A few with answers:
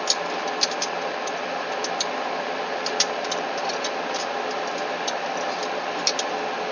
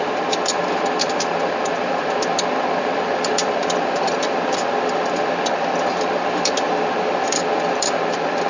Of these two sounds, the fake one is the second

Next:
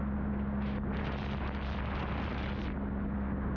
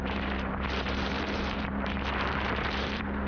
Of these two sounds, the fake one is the second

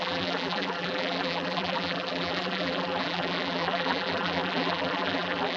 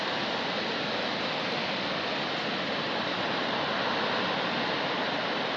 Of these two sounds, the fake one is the first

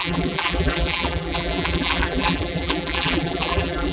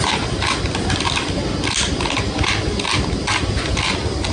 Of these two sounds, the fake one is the first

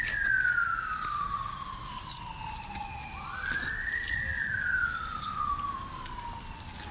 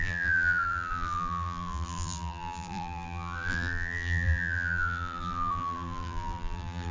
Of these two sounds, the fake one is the second